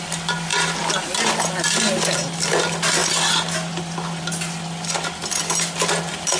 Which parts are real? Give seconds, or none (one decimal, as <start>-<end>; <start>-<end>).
0.0-6.4